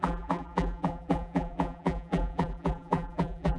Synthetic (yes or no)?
yes